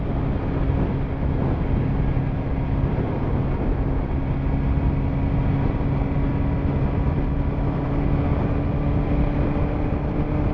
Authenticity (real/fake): real